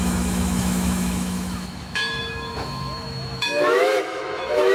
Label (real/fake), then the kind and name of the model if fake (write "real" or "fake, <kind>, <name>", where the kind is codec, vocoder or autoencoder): fake, autoencoder, DAC-VAE